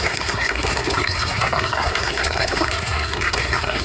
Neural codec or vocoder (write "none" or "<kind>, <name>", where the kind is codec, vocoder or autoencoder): codec, SNAC